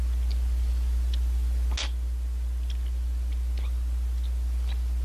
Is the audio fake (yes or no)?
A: no